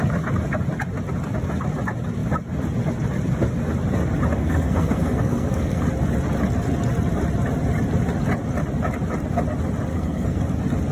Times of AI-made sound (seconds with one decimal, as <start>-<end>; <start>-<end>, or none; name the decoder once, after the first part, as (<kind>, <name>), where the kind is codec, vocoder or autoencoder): 4.4-5.8 (codec, SNAC); 9.9-10.4